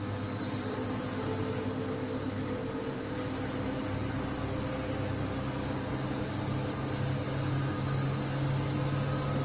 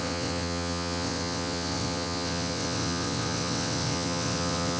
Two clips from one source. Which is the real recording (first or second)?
first